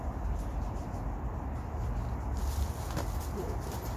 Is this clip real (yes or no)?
yes